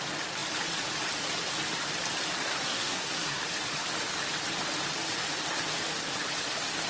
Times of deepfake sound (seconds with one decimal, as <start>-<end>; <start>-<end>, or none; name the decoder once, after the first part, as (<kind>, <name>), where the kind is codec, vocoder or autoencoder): 2.5-3.4 (codec, SNAC)